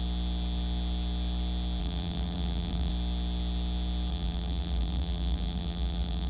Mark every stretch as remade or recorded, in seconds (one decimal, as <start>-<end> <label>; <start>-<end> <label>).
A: 0.0-1.8 recorded; 1.8-2.9 remade; 2.9-4.1 recorded; 4.1-6.3 remade